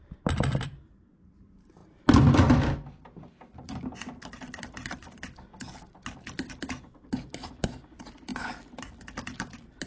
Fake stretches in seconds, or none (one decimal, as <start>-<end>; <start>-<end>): none